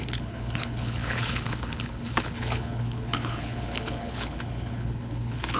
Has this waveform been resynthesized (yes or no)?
yes